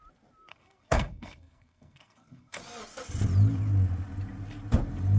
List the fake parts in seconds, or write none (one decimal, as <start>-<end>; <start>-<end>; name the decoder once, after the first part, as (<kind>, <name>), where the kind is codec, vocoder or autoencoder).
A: 0.5-2.6 (codec, SNAC)